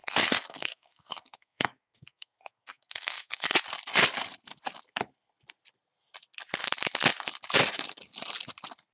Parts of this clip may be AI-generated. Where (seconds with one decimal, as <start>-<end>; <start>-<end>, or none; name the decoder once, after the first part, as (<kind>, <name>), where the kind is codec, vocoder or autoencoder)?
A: 0.0-3.6 (codec, SNAC)